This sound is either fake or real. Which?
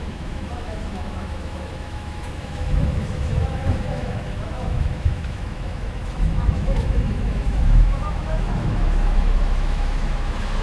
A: fake